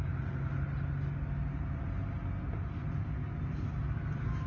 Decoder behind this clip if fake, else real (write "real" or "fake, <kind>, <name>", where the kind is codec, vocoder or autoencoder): real